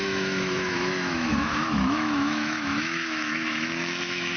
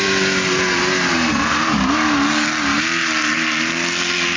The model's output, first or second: first